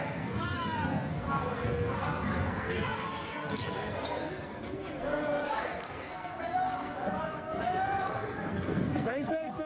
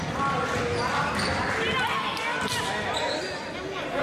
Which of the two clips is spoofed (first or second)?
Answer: first